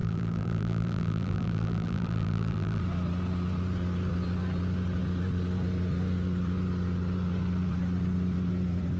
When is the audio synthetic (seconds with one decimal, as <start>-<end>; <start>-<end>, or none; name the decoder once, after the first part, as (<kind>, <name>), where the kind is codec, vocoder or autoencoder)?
0.0-2.8 (vocoder, BigVGAN v2)